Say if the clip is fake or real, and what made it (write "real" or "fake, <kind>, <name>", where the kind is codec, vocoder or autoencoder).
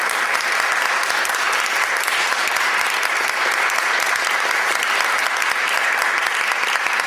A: real